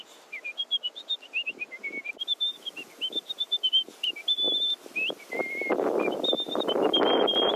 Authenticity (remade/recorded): recorded